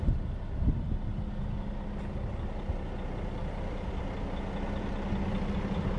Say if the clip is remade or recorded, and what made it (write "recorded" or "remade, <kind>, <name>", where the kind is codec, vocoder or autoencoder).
recorded